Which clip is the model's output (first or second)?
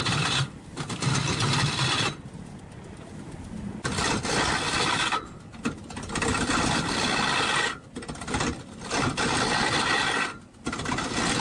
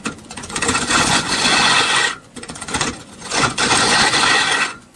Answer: second